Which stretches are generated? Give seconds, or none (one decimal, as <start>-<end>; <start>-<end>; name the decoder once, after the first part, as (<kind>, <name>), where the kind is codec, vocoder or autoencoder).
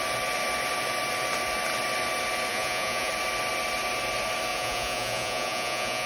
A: 2.5-3.1 (vocoder, Vocos); 4.5-6.1